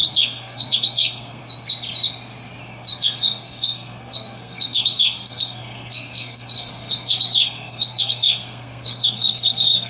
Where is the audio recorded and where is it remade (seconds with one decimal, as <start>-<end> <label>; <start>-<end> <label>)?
0.0-1.4 remade; 1.4-2.9 recorded; 2.9-9.9 remade